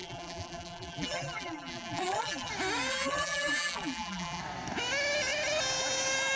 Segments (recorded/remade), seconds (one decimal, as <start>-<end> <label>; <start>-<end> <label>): 0.0-2.5 remade; 2.5-2.9 recorded; 2.9-4.4 remade; 4.4-6.4 recorded